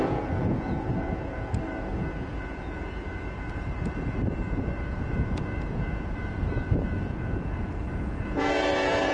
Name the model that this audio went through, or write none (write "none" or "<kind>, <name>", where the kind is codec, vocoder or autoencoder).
vocoder, Vocos